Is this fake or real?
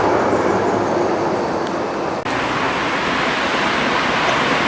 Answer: real